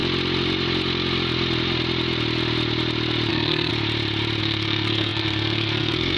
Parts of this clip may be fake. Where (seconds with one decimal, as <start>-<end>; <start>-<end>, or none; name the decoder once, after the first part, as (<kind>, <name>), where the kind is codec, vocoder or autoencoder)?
3.3-3.7 (codec, SNAC); 4.4-6.2